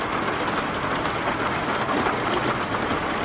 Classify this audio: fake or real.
real